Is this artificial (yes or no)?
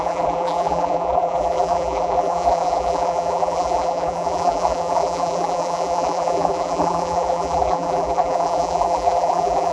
yes